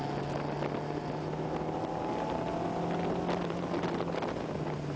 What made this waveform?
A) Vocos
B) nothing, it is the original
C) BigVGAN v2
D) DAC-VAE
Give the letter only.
B